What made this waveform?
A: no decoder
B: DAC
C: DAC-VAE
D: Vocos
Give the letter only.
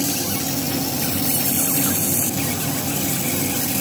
A